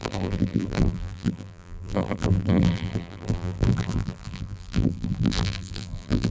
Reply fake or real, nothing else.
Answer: fake